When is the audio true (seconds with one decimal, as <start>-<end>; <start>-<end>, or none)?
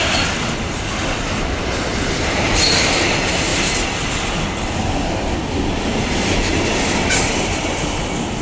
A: 0.0-1.9; 2.5-6.5; 7.6-8.4